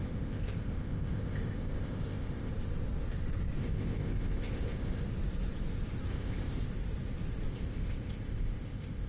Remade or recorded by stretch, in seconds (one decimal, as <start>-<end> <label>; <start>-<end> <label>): 0.0-2.5 remade; 2.5-3.6 recorded; 3.6-5.0 remade; 5.0-6.1 recorded; 6.1-6.6 remade; 6.6-7.5 recorded; 7.5-9.1 remade